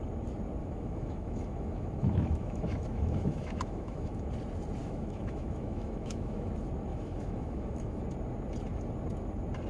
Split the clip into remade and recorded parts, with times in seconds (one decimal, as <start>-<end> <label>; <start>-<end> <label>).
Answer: 0.0-0.6 recorded; 0.6-4.3 remade; 4.3-4.8 recorded; 4.8-6.5 remade; 6.5-6.9 recorded; 6.9-8.0 remade; 8.0-9.7 recorded